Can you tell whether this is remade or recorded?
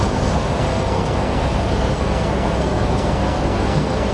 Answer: remade